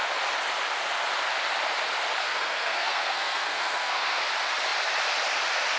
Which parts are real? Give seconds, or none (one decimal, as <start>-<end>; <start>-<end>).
0.0-2.2; 4.2-5.8